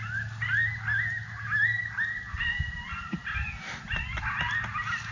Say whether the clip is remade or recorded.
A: recorded